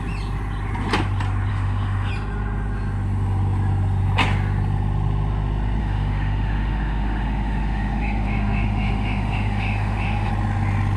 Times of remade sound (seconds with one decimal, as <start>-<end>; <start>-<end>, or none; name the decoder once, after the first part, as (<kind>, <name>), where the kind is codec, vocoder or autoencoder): 1.5-2.1 (autoencoder, DAC-VAE); 5.8-10.3